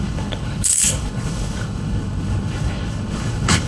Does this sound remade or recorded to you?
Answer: remade